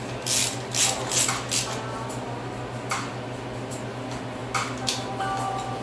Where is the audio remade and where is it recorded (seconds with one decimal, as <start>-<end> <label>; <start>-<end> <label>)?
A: 0.0-5.8 recorded